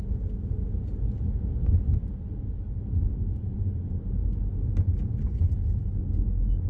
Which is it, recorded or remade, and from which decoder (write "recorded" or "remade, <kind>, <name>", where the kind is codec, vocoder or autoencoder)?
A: recorded